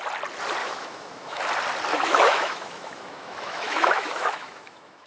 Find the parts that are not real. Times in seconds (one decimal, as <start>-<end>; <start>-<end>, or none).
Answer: 0.6-1.4; 1.9-5.1